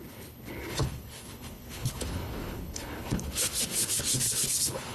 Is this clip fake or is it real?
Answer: fake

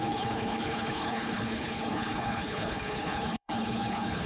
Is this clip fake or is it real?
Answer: fake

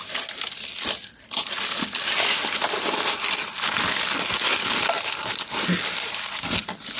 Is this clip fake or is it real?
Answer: real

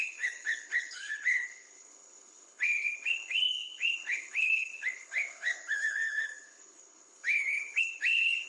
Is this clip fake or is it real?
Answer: fake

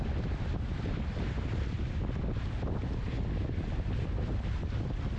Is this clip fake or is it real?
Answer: real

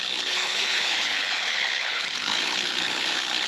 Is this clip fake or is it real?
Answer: fake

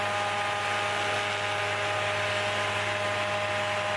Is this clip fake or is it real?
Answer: real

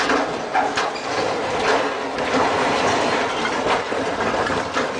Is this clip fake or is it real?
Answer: real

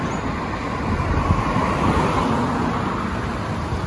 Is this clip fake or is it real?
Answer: real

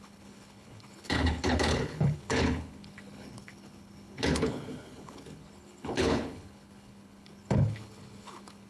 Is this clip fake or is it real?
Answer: fake